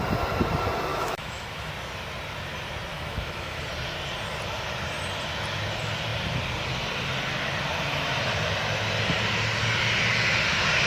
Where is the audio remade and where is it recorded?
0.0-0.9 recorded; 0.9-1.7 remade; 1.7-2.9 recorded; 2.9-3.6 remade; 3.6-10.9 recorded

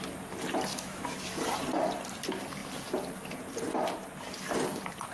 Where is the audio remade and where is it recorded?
0.0-0.7 recorded; 0.7-1.4 remade; 1.4-5.1 recorded

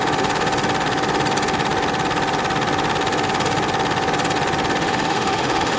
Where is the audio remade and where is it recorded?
0.0-4.8 recorded; 4.8-5.8 remade